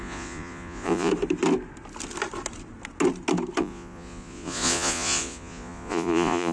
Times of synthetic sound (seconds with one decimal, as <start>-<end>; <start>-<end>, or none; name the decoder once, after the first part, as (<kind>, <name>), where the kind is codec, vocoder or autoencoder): 0.0-1.1 (vocoder, Vocos); 3.6-6.5